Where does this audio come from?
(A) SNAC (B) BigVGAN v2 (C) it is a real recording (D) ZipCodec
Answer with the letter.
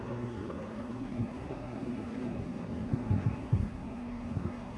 A